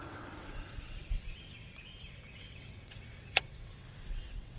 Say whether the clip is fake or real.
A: fake